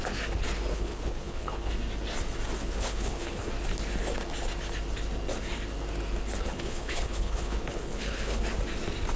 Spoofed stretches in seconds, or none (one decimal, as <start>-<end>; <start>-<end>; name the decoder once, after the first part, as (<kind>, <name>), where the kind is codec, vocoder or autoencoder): 0.7-1.7 (codec, HILCodec); 2.6-3.5; 6.4-8.4